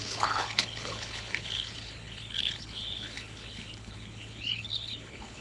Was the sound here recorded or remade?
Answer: remade